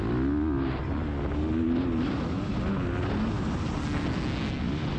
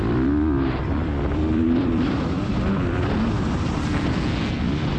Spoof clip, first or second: second